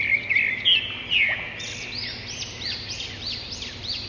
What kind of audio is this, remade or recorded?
recorded